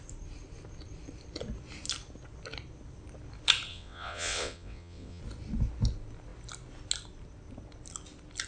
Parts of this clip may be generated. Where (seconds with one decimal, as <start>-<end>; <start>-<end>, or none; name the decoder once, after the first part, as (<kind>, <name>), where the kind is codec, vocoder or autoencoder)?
3.7-5.2 (vocoder, WaveNeXt)